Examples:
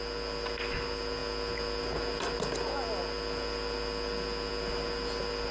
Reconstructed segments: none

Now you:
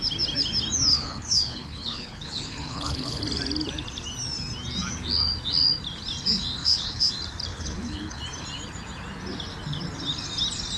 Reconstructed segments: 0.9-3.2 (codec, HILCodec); 6.6-7.1; 7.5-8.2

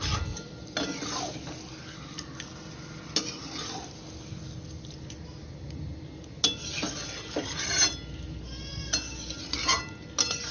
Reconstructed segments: none